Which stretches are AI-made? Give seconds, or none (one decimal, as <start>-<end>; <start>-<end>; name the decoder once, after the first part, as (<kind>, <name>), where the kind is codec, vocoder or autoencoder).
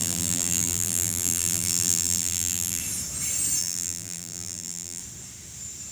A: 0.0-2.8 (vocoder, BigVGAN v2); 3.6-5.0